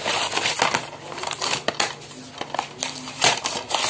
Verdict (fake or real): real